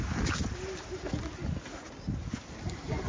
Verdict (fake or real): real